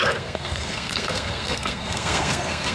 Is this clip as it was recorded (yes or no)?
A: no